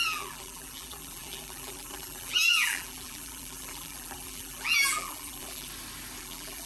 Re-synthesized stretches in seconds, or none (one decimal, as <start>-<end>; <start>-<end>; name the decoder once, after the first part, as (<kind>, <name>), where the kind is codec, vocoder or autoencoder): 0.0-5.7 (vocoder, BigVGAN v2); 6.2-6.7